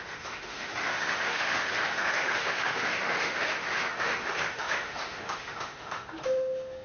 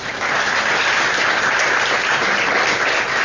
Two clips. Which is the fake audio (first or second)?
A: first